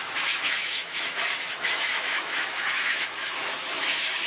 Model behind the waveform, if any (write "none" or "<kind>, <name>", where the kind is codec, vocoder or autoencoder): autoencoder, DAC-VAE